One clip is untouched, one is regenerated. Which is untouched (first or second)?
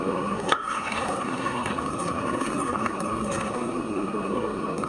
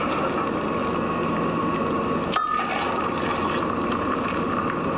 second